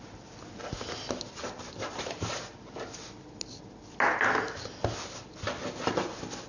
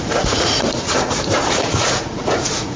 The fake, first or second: second